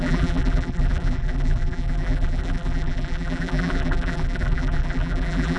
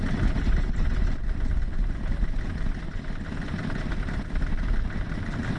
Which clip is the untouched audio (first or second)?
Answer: second